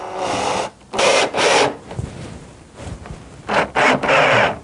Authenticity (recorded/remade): recorded